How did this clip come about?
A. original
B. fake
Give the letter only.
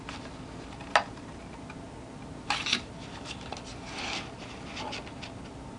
A